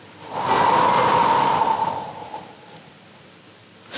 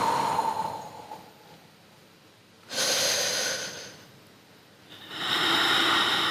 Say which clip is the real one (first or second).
second